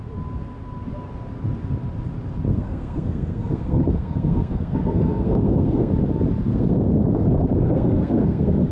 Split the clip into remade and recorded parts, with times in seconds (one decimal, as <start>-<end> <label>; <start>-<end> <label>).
0.0-2.5 recorded; 2.5-5.9 remade; 5.9-6.5 recorded; 6.5-8.7 remade